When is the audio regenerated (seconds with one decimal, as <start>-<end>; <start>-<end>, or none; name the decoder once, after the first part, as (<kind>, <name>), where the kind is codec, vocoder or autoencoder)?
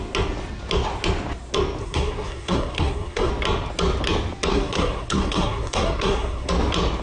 1.8-3.3 (codec, SNAC); 4.5-6.5